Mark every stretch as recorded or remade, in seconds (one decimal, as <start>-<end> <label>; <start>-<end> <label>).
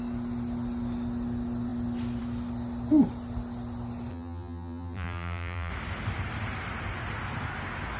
0.0-4.1 recorded; 4.1-5.7 remade; 5.7-8.0 recorded